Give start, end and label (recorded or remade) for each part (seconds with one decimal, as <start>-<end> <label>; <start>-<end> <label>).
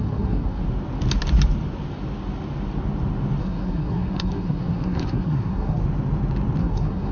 0.0-0.6 remade; 0.6-3.4 recorded; 3.4-5.8 remade; 5.8-6.6 recorded; 6.6-7.1 remade